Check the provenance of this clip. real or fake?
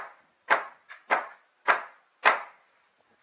real